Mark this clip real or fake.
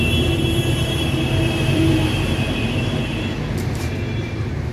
fake